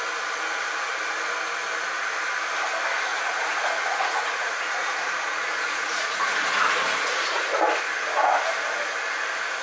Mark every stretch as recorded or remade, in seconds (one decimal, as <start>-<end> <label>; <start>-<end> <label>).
0.0-3.1 recorded; 3.1-7.6 remade; 7.6-9.6 recorded